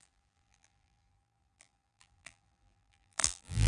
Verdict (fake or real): fake